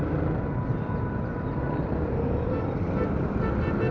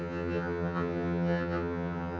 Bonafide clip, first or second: first